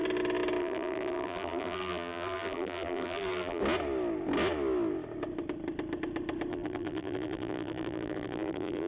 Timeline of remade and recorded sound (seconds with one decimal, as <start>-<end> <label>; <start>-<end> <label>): 0.0-0.6 recorded; 0.6-3.6 remade; 3.6-6.5 recorded; 6.5-8.9 remade